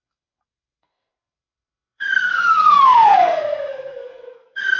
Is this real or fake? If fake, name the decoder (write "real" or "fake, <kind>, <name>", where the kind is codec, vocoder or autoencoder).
fake, codec, SNAC